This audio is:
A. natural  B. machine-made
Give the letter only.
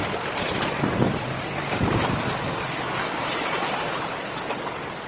A